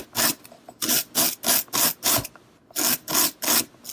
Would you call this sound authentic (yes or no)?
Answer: yes